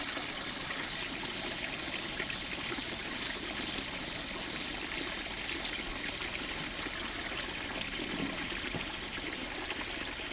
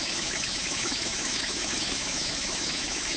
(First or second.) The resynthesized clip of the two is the second